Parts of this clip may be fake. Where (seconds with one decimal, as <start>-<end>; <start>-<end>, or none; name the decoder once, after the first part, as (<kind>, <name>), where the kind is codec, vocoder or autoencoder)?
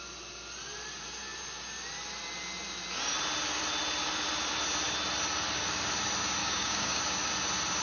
6.4-7.0 (codec, DAC)